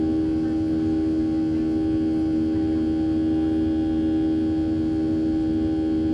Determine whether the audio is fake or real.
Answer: real